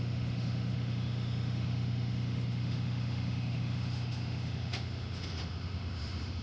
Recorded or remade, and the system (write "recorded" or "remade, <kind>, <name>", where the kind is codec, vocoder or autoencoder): remade, autoencoder, DAC-VAE